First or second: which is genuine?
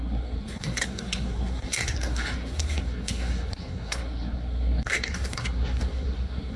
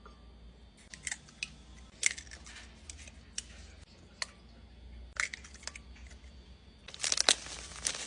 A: second